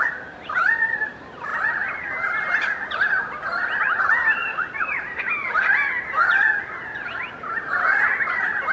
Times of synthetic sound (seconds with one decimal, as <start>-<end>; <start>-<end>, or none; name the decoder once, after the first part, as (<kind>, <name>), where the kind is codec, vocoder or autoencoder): 0.0-1.5 (vocoder, BigVGAN v2); 4.0-4.4